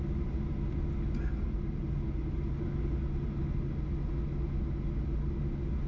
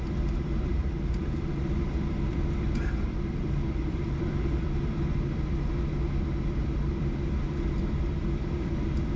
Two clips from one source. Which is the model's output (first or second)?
second